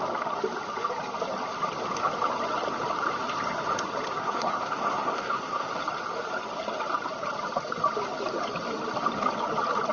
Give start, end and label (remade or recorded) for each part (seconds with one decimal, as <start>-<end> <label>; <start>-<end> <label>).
0.0-4.2 recorded; 4.2-5.7 remade; 5.7-9.9 recorded